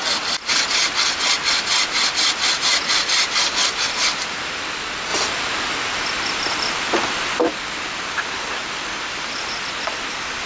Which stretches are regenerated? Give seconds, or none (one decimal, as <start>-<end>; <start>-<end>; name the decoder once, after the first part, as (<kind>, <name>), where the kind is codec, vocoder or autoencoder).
none